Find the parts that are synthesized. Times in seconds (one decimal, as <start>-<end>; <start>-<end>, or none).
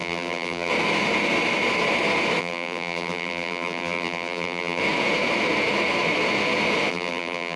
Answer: 0.0-0.7; 2.4-4.8; 6.9-7.6